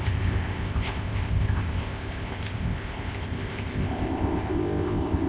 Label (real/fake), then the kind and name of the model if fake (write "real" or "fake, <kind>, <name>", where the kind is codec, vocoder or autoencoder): fake, codec, ZipCodec